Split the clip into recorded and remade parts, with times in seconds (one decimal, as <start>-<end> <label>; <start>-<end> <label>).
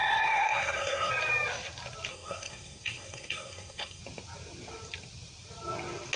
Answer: 0.0-1.1 remade; 1.1-2.1 recorded; 2.1-4.0 remade; 4.0-6.2 recorded